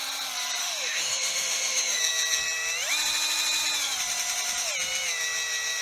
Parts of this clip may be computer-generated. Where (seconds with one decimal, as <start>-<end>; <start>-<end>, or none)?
0.6-2.0